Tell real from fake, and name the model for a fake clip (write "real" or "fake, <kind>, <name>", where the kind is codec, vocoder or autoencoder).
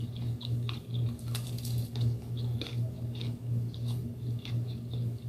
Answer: fake, codec, DAC